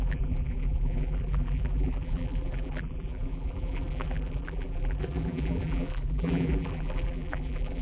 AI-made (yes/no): yes